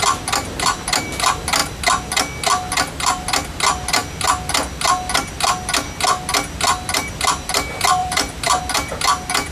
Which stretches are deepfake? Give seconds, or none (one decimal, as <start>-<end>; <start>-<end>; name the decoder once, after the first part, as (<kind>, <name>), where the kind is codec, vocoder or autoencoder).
8.0-8.6 (vocoder, BigVGAN v2)